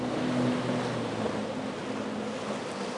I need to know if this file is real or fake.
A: real